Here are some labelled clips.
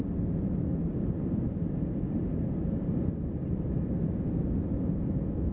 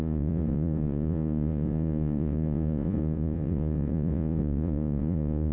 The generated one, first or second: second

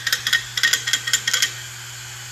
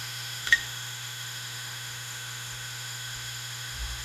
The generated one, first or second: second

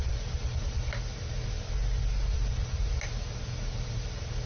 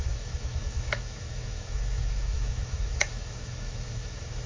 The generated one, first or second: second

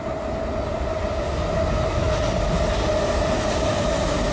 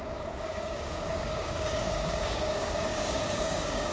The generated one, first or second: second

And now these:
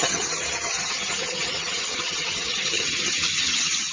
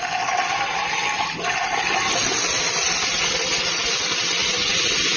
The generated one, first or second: first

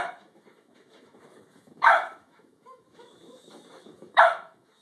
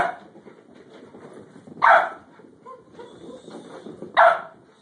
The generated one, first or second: first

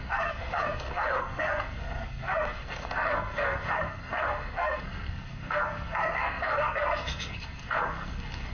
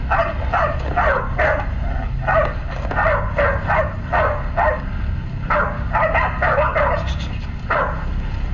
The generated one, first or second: first